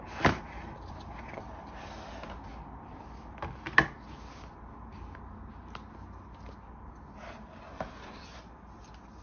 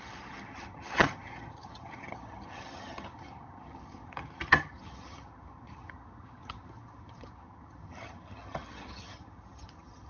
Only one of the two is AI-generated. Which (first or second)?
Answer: second